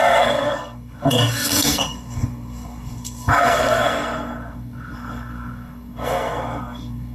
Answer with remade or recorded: remade